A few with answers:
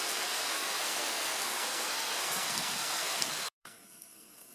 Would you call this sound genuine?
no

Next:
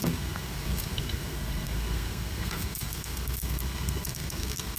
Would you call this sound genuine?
no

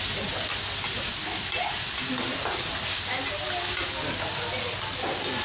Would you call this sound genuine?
yes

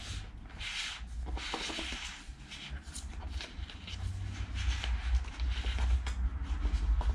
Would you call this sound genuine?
yes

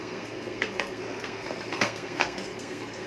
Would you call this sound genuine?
no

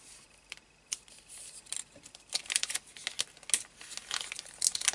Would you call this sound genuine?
yes